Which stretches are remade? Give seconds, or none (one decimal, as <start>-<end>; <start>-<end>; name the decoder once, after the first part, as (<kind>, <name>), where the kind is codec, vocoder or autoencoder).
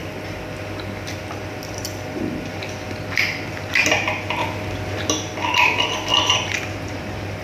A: 0.0-3.5 (vocoder, BigVGAN v2); 4.4-5.1